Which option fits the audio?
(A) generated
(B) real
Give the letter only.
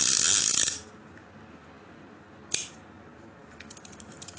B